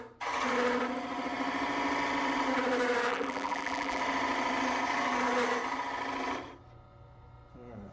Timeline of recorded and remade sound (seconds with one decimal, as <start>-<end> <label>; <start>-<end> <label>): 0.0-3.1 recorded; 3.1-4.0 remade; 4.0-7.9 recorded